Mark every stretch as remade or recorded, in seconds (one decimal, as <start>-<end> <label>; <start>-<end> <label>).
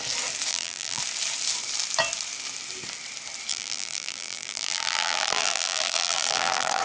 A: 0.0-0.5 recorded; 0.5-1.0 remade; 1.0-3.5 recorded; 3.5-6.8 remade